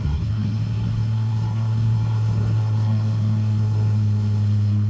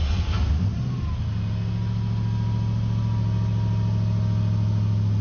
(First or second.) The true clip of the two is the second